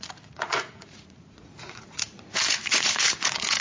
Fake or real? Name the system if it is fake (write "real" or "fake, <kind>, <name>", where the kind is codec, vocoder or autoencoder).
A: fake, vocoder, Vocos